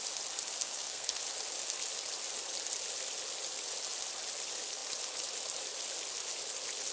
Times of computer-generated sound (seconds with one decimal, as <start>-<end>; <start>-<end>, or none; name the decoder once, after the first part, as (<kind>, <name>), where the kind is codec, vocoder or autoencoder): 0.6-1.2 (codec, SNAC)